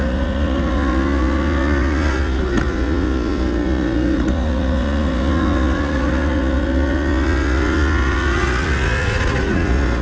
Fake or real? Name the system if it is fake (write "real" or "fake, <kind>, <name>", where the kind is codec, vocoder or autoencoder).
fake, vocoder, Vocos